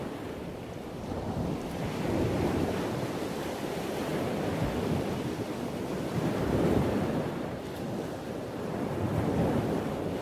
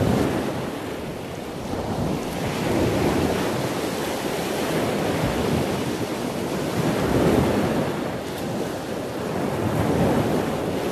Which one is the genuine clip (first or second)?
second